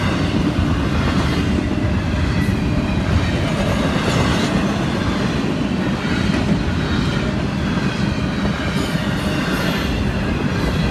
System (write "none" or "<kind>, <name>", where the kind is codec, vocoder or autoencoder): none